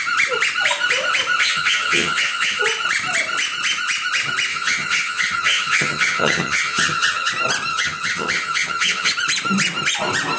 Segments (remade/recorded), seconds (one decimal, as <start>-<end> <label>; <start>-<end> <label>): 0.0-1.4 recorded; 1.4-2.6 remade; 2.6-4.5 recorded; 4.5-7.3 remade; 7.3-7.7 recorded; 7.7-9.1 remade; 9.1-10.4 recorded